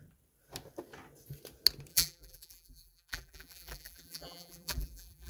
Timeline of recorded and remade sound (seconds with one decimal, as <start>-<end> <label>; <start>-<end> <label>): 0.0-1.9 recorded; 1.9-5.3 remade